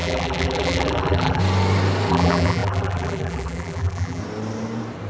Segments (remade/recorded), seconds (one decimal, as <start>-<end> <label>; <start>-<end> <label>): 0.0-1.4 remade; 1.4-2.1 recorded; 2.1-4.2 remade; 4.2-5.1 recorded